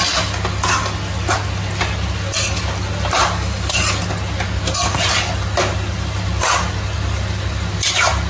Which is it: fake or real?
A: real